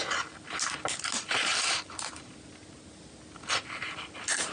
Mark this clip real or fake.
real